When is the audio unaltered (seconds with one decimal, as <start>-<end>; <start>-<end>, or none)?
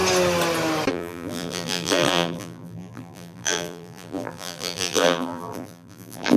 0.0-0.9